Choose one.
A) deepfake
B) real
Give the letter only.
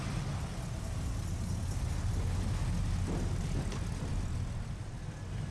B